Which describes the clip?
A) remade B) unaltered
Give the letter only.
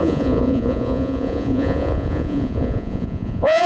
A